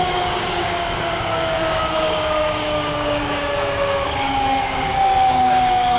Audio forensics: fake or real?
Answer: fake